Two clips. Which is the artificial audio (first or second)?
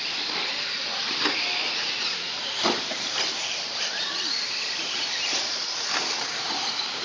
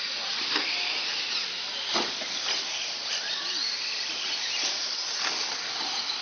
first